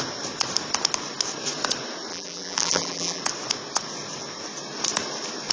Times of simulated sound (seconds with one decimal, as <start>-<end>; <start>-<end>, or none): 2.1-3.2